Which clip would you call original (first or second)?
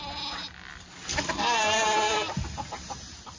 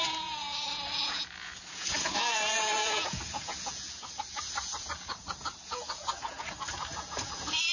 first